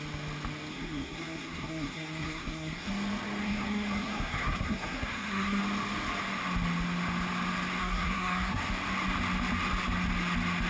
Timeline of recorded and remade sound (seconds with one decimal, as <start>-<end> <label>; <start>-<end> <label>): 0.0-0.7 recorded; 0.7-2.9 remade; 2.9-3.4 recorded; 3.4-5.6 remade; 5.6-7.8 recorded; 7.8-8.7 remade; 8.7-10.7 recorded